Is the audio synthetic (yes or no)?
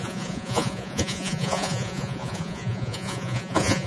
yes